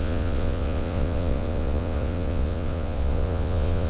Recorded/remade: remade